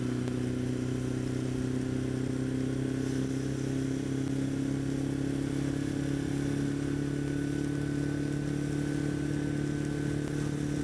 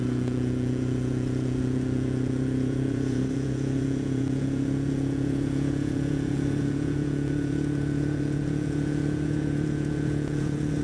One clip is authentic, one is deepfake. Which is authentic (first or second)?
first